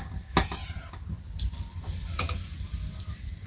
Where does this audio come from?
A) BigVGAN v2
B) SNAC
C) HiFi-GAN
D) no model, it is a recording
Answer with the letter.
D